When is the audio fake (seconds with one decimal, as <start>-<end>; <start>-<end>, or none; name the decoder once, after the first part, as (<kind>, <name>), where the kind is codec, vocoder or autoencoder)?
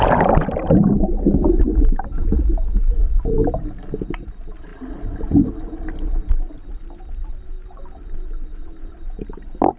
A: none